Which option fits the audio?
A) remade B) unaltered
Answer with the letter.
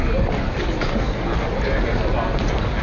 B